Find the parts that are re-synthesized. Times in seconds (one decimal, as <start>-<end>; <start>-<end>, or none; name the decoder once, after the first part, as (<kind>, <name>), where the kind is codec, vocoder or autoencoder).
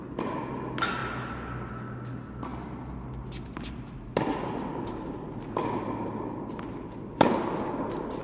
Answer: none